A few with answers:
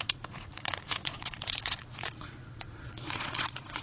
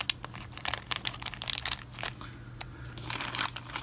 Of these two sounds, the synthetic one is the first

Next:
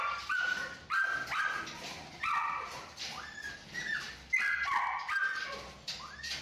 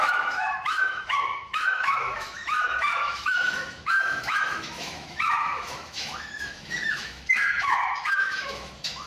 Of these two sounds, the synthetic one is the second